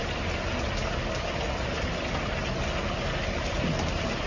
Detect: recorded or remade recorded